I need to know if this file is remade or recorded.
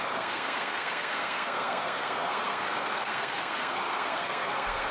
remade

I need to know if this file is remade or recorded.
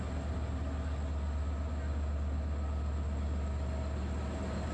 recorded